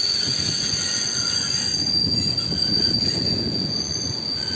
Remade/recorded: remade